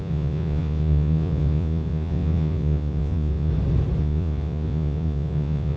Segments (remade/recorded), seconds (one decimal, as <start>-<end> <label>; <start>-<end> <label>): 0.0-3.5 remade; 3.5-4.0 recorded; 4.0-5.8 remade